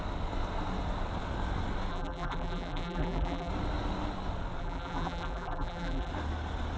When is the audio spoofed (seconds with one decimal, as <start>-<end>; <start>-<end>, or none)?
1.9-3.5; 4.6-6.1